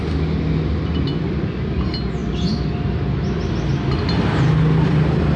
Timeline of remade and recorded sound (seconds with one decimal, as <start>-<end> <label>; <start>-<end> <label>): 0.0-5.4 recorded